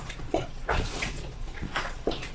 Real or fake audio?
fake